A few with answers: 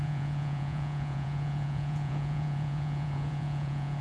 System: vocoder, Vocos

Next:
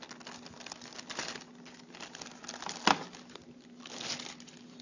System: none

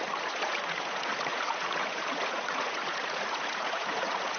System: vocoder, Vocos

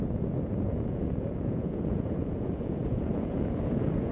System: vocoder, Vocos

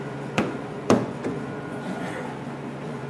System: vocoder, Vocos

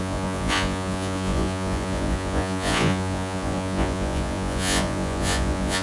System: vocoder, Vocos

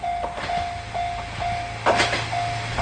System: none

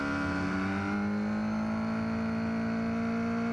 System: none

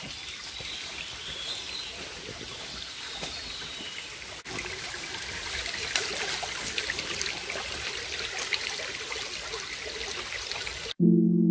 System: none